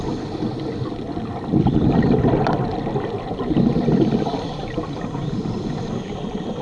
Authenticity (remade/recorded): recorded